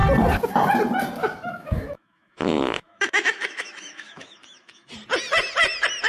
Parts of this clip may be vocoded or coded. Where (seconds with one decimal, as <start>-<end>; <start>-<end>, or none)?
1.2-4.9